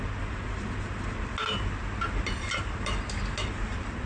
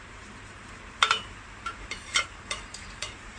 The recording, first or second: first